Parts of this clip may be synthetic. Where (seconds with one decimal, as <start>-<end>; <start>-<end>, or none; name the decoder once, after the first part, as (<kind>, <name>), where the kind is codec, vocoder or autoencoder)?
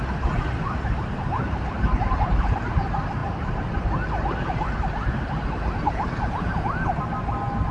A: none